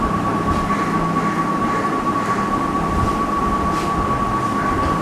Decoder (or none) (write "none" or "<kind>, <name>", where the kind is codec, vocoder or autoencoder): none